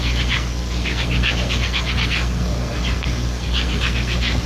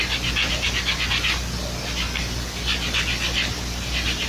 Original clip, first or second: second